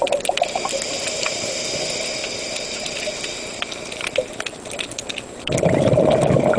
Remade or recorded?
recorded